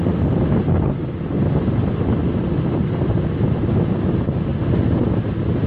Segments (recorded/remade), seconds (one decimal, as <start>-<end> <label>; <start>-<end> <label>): 0.0-5.7 recorded

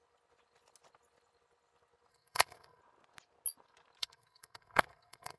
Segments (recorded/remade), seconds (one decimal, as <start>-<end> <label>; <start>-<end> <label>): 0.0-2.1 recorded; 2.1-2.8 remade; 2.8-4.0 recorded; 4.0-5.4 remade

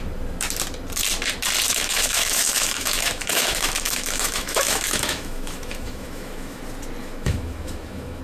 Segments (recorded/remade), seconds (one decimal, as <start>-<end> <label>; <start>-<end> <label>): 0.0-1.7 recorded; 1.7-6.6 remade; 6.6-7.0 recorded; 7.0-8.2 remade